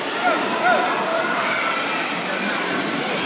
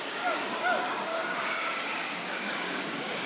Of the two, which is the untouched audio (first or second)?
first